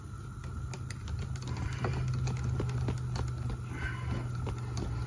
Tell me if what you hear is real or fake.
real